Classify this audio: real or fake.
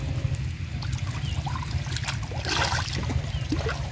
real